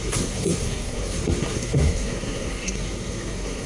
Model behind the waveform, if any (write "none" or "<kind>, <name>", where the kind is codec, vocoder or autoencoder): codec, SNAC